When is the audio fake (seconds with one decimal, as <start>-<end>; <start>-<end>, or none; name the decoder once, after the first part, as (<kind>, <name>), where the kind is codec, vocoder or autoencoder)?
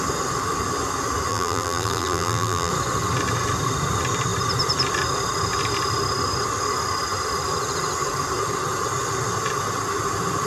1.3-2.7 (vocoder, BigVGAN v2)